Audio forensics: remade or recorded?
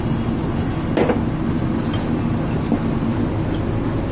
recorded